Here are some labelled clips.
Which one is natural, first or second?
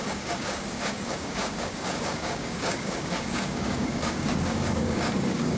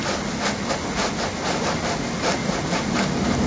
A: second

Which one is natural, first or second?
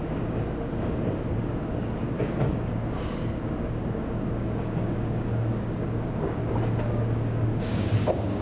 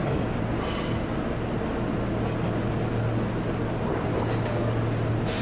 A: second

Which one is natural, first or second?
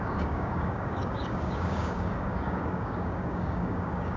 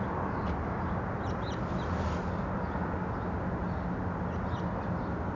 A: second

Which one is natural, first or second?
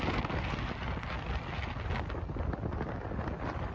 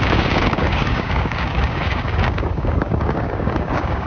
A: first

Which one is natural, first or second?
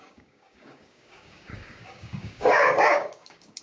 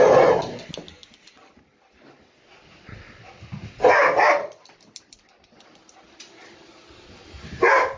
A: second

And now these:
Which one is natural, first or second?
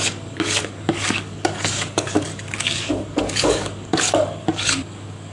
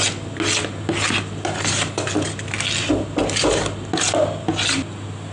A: second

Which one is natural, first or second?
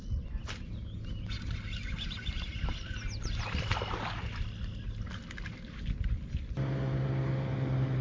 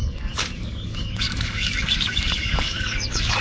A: first